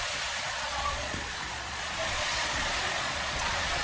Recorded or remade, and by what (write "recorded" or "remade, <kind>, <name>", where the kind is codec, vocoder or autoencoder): remade, vocoder, Vocos